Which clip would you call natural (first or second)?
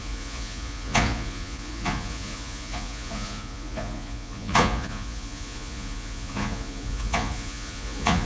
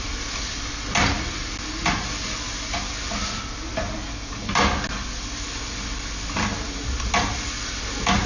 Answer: second